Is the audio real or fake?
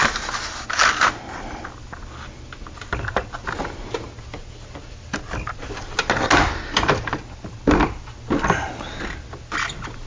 real